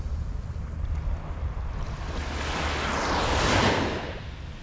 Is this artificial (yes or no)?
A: no